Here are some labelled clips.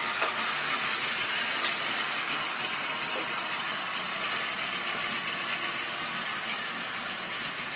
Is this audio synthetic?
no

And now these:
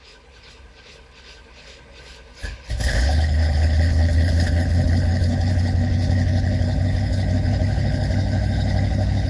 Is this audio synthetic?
yes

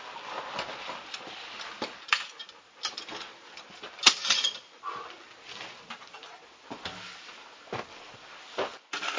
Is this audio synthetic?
no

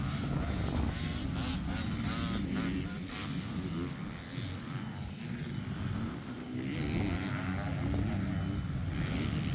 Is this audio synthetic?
no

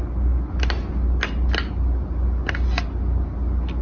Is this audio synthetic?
no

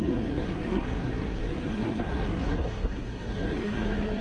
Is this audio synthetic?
yes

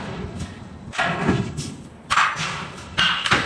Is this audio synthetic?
no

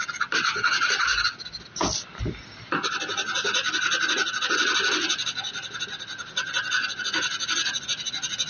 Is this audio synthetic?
no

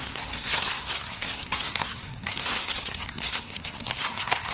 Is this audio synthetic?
yes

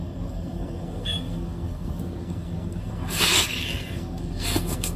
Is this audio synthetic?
yes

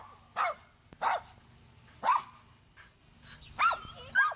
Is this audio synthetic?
no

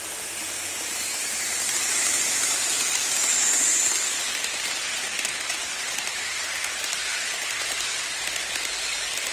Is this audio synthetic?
yes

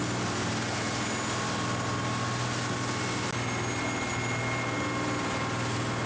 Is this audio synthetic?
no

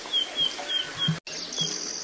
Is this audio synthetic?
no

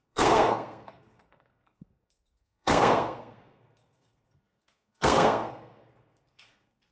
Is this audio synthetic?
yes